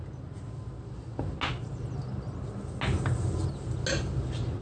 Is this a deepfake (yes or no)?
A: no